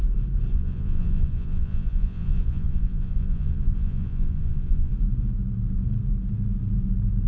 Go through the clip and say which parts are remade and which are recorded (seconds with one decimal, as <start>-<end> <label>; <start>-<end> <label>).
0.0-0.5 recorded; 0.5-4.9 remade; 4.9-7.3 recorded